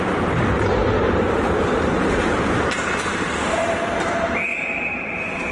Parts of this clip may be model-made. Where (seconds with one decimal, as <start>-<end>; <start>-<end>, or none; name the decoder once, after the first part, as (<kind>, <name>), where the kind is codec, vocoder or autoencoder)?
0.8-2.7 (vocoder, BigVGAN v2); 4.5-5.1